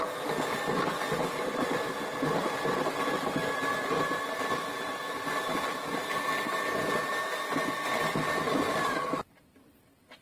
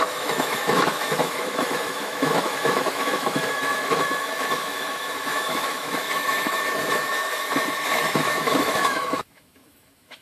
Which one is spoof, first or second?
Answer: second